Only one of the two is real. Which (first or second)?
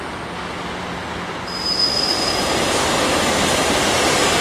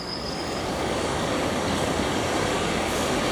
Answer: first